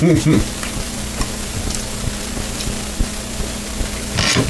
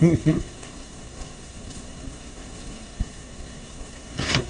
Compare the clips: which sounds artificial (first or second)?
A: second